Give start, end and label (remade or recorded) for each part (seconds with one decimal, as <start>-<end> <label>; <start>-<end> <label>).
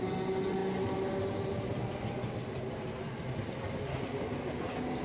0.0-5.0 recorded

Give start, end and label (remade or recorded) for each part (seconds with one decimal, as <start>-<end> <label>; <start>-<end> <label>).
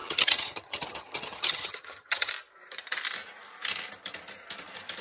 0.0-2.3 remade; 2.3-5.0 recorded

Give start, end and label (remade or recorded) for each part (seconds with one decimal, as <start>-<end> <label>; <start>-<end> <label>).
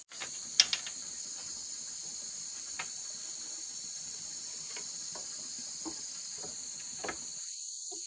0.0-1.2 recorded; 1.2-1.8 remade; 1.8-8.1 recorded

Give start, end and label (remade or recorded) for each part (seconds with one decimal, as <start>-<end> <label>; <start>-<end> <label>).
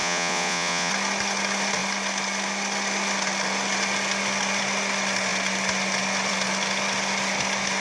0.0-0.9 remade; 0.9-7.8 recorded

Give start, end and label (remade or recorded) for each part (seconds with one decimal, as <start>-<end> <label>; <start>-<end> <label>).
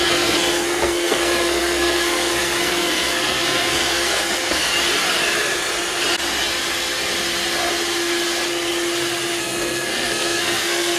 0.0-4.7 remade; 4.7-9.4 recorded; 9.4-11.0 remade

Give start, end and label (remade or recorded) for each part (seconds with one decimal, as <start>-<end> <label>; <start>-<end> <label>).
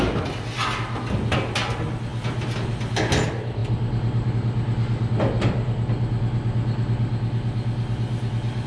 0.0-8.7 recorded